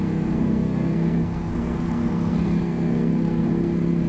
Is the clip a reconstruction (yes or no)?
yes